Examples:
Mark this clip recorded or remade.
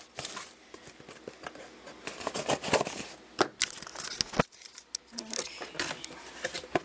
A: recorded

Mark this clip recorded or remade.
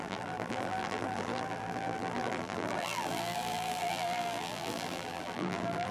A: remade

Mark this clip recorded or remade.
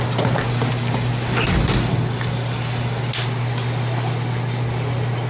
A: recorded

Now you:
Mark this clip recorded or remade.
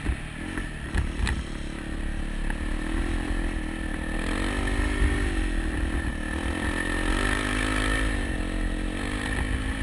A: recorded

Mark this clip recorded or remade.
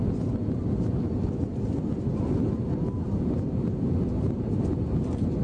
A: recorded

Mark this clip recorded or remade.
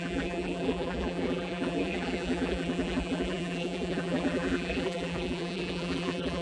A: remade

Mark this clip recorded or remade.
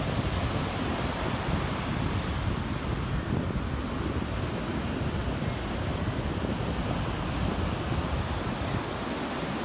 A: recorded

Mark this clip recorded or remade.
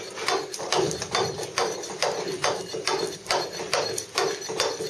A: recorded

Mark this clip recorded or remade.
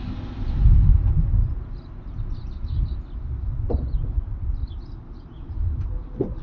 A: recorded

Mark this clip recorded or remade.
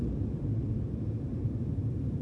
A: remade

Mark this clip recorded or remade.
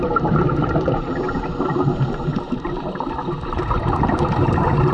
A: remade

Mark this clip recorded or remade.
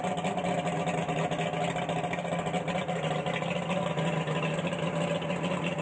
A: recorded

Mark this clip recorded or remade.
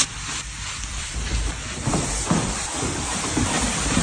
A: remade